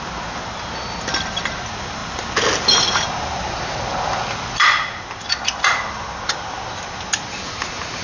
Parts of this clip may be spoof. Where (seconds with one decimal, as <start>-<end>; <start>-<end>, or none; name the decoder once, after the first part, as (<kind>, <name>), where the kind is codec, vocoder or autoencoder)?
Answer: none